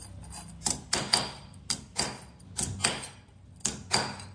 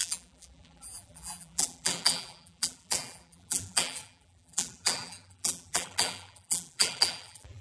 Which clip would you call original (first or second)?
first